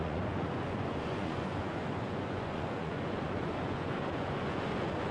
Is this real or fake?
fake